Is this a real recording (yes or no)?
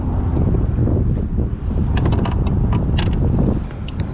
yes